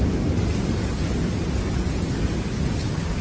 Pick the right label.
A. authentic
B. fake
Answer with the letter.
A